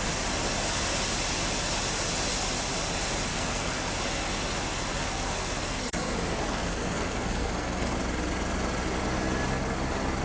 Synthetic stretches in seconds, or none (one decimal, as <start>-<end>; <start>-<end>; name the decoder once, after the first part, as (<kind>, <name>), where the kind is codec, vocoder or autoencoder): 3.3-3.9 (codec, SNAC); 4.9-8.0